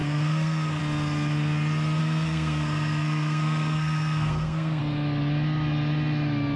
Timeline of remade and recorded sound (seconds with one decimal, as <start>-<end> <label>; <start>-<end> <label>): 0.0-0.8 remade; 0.8-2.0 recorded; 2.0-4.8 remade; 4.8-6.6 recorded